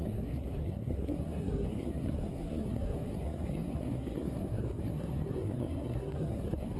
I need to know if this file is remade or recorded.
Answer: remade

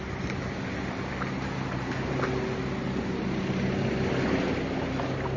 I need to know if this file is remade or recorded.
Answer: recorded